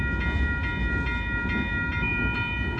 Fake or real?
real